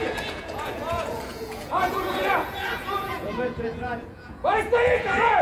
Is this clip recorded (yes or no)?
no